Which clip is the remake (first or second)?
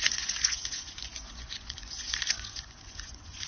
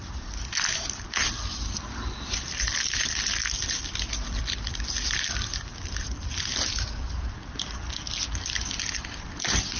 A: first